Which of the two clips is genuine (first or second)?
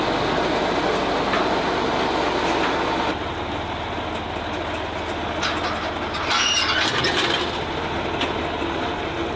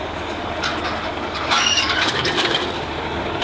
first